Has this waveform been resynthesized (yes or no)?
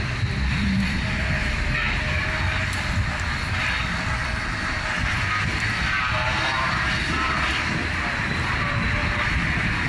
yes